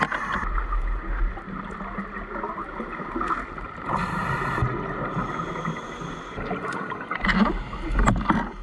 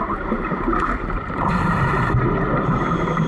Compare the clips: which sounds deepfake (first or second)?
second